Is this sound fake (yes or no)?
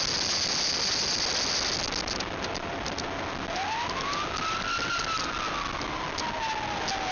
no